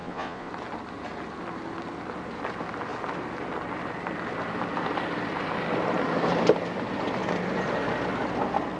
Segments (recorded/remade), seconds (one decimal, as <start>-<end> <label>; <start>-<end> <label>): 0.0-0.5 remade; 0.5-8.8 recorded